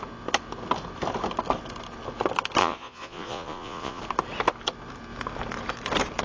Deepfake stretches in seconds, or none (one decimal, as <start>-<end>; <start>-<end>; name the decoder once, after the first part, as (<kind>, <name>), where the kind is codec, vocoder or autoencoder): 2.6-4.0 (vocoder, Vocos)